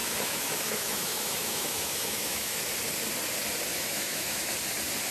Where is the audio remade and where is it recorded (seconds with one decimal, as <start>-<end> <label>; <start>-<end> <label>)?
0.0-2.6 remade; 2.6-3.7 recorded; 3.7-4.5 remade; 4.5-5.1 recorded